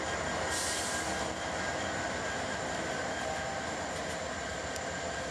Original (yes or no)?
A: yes